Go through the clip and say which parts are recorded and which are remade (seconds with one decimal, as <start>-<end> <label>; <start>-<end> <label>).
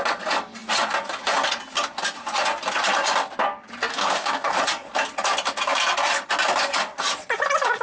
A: 0.0-3.9 recorded; 3.9-4.6 remade; 4.6-7.8 recorded